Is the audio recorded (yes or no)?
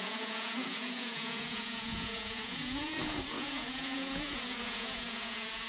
no